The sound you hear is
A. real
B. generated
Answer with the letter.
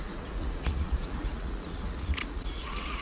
B